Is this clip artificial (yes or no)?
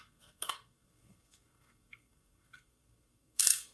yes